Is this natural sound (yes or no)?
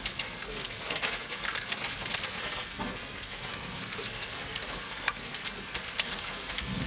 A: no